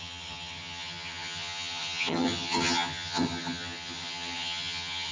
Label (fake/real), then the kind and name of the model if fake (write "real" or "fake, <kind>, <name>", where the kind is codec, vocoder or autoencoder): fake, vocoder, HiFi-GAN